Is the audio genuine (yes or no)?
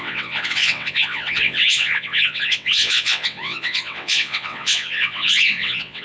no